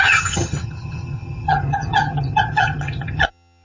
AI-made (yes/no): yes